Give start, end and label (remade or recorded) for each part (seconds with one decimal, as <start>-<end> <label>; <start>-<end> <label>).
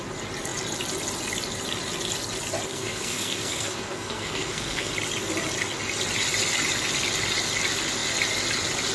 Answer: 0.0-2.7 recorded; 2.7-4.9 remade; 4.9-8.9 recorded